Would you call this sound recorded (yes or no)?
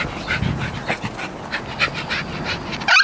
yes